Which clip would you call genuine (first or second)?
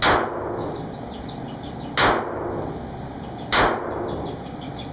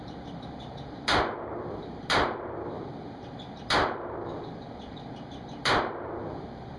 first